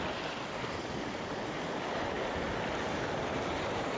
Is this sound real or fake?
real